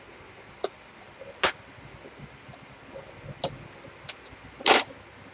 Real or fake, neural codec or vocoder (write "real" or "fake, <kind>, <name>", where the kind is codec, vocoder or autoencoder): real